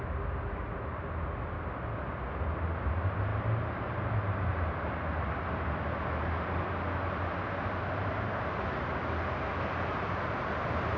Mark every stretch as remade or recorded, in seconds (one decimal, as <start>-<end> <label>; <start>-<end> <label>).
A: 0.0-11.0 recorded